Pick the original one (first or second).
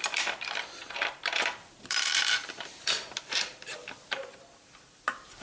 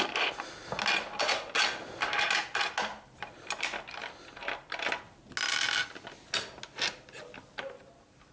second